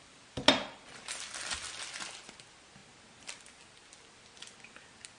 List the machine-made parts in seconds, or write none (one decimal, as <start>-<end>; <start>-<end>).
none